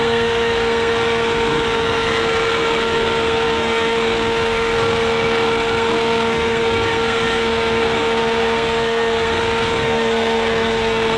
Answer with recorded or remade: remade